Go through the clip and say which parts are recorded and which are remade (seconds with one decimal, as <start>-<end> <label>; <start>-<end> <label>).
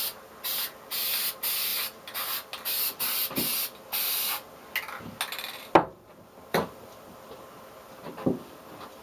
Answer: 0.0-9.0 recorded